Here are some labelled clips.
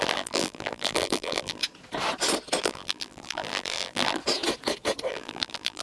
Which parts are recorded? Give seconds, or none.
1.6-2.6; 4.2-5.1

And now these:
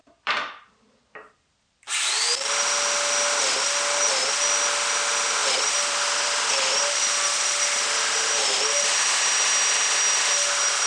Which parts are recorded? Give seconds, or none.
1.0-5.4; 7.5-10.9

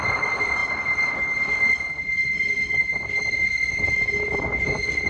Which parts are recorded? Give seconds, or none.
4.5-5.1

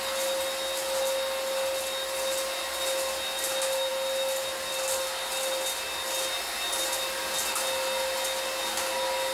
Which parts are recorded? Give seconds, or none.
0.0-9.3

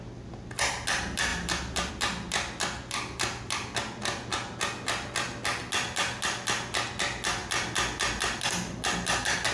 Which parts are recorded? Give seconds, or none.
0.0-9.5

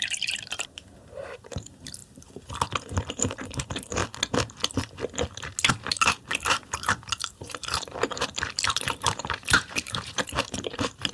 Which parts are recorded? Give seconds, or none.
2.0-3.1; 4.0-5.7